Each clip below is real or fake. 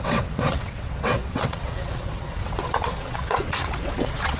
fake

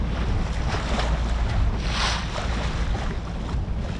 real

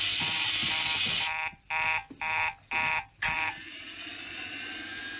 real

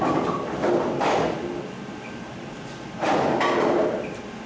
real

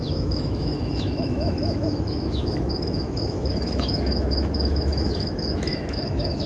fake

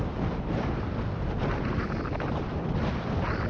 real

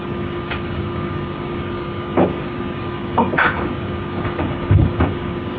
fake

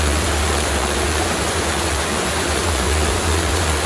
fake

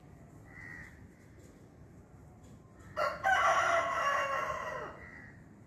real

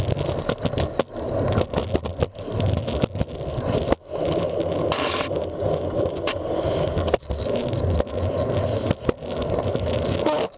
real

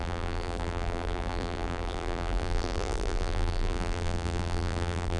fake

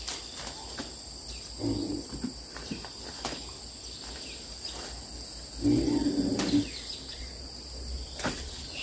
real